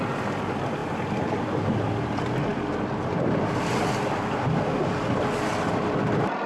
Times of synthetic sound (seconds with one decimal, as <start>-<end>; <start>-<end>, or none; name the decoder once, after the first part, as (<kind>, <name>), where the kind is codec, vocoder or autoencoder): none